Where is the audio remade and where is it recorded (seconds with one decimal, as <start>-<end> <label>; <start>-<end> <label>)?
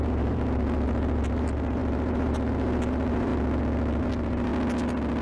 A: 0.0-3.3 remade; 3.3-4.0 recorded; 4.0-4.5 remade; 4.5-5.2 recorded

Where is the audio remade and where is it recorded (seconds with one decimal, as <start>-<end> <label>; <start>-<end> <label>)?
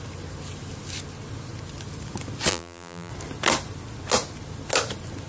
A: 0.0-2.5 recorded; 2.5-3.1 remade; 3.1-5.3 recorded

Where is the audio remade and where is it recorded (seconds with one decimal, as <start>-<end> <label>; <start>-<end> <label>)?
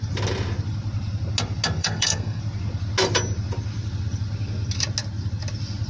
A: 0.0-1.8 recorded; 1.8-2.4 remade; 2.4-5.9 recorded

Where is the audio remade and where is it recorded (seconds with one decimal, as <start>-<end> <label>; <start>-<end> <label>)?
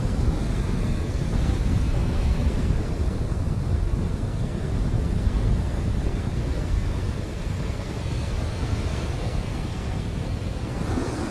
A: 0.0-11.3 remade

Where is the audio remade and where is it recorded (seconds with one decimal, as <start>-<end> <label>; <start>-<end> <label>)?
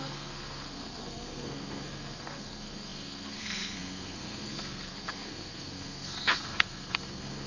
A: 0.0-7.5 remade